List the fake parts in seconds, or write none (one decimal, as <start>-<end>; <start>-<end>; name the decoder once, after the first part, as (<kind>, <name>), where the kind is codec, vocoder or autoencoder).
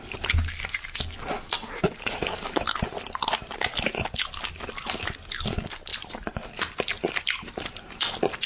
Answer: none